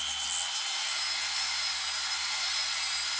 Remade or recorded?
recorded